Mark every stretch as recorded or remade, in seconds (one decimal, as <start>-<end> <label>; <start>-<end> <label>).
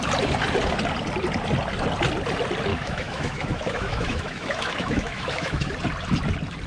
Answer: 0.0-2.7 recorded; 2.7-5.7 remade; 5.7-6.7 recorded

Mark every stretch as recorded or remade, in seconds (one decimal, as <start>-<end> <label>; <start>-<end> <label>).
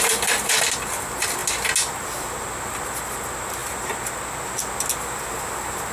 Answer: 0.0-5.9 recorded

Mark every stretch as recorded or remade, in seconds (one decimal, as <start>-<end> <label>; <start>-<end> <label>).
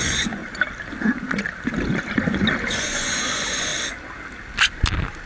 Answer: 0.0-0.4 remade; 0.4-2.7 recorded; 2.7-3.7 remade; 3.7-5.3 recorded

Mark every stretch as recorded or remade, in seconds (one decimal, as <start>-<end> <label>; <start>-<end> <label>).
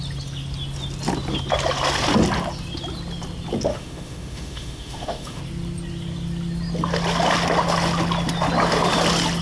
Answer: 0.0-3.7 recorded; 3.7-5.4 remade; 5.4-9.4 recorded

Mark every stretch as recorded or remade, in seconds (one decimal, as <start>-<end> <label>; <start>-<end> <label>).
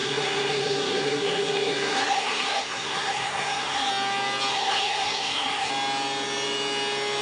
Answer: 0.0-3.9 remade; 3.9-4.5 recorded; 4.5-5.7 remade; 5.7-7.2 recorded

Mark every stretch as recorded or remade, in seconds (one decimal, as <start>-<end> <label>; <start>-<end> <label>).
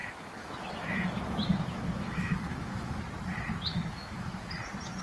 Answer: 0.0-3.0 remade; 3.0-3.7 recorded; 3.7-4.5 remade; 4.5-5.0 recorded